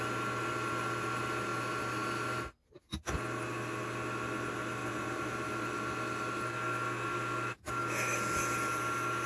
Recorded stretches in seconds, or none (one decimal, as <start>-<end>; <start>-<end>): 0.0-9.3